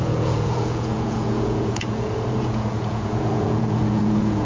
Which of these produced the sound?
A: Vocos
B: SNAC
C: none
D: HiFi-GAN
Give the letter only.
A